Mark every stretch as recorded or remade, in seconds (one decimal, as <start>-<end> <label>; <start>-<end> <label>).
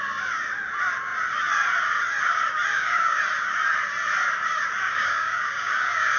0.0-2.7 recorded; 2.7-3.2 remade; 3.2-4.8 recorded; 4.8-6.2 remade